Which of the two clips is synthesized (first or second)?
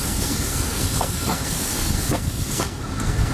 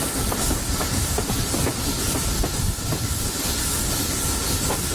first